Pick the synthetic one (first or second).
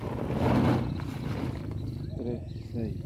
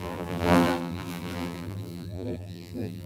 second